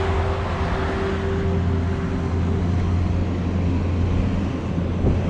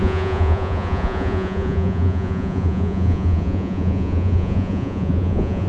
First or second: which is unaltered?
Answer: first